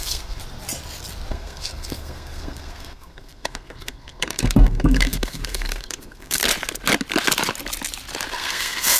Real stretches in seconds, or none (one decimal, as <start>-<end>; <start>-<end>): 0.4-1.3; 6.4-8.3